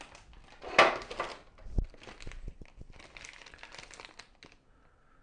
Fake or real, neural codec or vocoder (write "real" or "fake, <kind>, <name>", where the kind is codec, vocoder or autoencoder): real